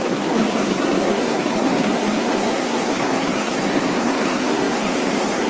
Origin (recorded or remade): remade